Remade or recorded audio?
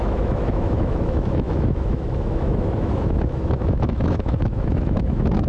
remade